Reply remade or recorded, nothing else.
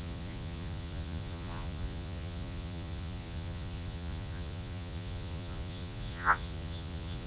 remade